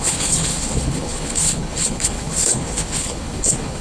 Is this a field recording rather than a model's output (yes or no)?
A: no